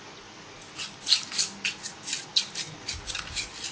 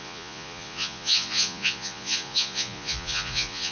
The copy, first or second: second